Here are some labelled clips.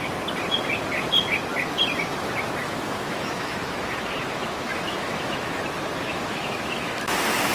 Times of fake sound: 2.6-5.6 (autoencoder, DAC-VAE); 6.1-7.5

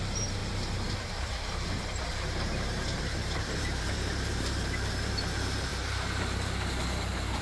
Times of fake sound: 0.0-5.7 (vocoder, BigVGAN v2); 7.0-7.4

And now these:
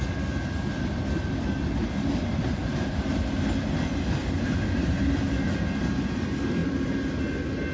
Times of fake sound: 2.6-3.1 (vocoder, BigVGAN v2); 4.2-5.0